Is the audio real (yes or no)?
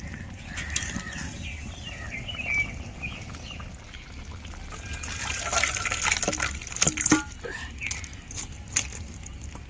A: yes